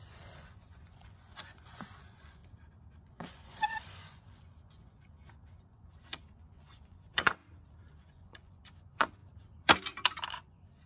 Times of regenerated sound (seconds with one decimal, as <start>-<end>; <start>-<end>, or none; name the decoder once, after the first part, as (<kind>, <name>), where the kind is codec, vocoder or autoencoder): 0.0-2.4 (vocoder, Vocos); 3.0-7.4; 7.9-9.2; 10.3-10.9